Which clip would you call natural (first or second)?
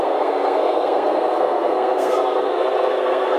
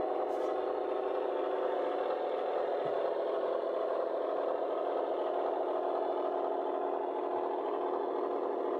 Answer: second